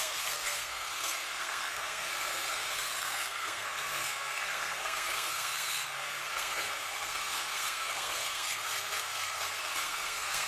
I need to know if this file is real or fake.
fake